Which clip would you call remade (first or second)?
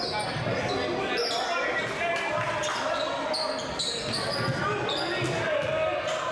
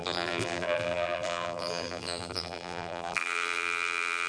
second